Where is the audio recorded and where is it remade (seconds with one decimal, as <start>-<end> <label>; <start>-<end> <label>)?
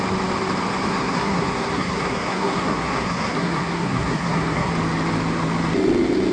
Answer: 0.0-0.9 recorded; 0.9-4.7 remade; 4.7-6.3 recorded